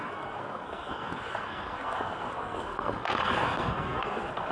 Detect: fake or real fake